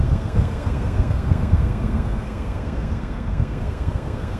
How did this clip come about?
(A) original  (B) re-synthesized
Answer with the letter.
B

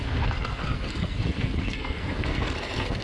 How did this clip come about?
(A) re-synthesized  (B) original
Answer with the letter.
A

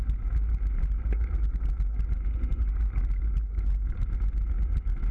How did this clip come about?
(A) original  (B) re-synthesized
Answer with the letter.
A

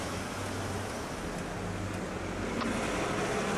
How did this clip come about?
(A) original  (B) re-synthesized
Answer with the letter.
A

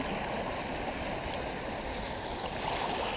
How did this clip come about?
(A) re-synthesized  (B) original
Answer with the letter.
B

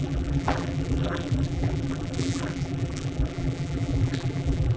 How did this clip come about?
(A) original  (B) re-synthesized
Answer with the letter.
B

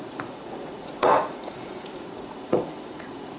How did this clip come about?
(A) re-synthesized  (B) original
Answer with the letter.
A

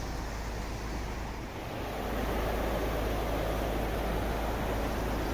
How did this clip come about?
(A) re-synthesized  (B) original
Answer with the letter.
B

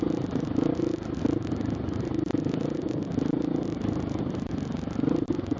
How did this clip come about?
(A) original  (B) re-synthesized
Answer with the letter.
A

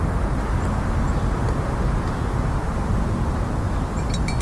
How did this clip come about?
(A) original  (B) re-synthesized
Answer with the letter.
A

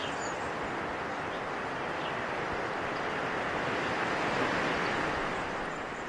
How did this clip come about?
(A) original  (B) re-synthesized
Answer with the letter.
B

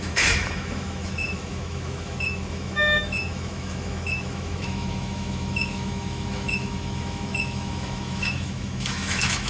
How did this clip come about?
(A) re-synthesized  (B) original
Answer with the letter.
A